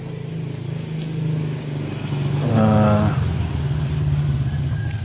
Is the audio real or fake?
real